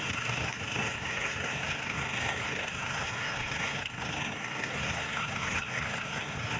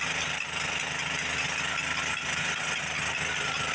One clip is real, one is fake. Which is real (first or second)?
second